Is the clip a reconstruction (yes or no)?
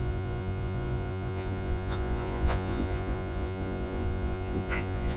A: yes